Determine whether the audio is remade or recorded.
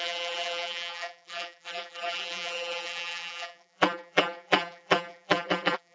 remade